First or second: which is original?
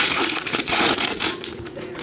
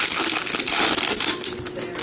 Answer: second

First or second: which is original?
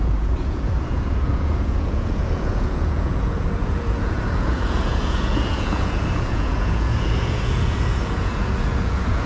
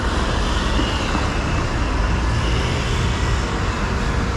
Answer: second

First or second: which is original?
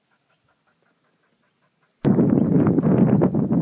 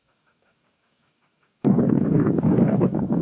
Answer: first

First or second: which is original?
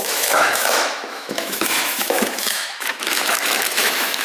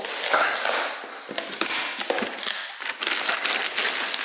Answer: second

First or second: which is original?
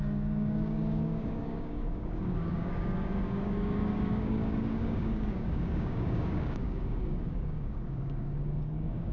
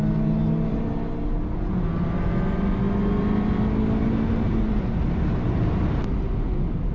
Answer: second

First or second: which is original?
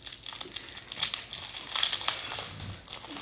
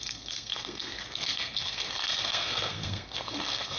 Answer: first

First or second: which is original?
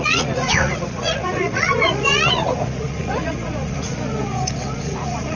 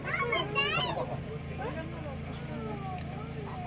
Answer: second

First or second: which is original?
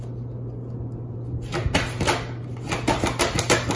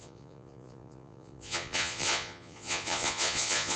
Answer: first